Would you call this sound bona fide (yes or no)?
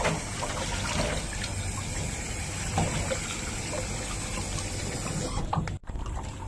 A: yes